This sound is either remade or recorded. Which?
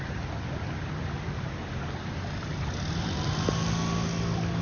recorded